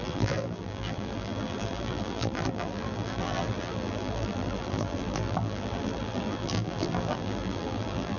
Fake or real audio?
fake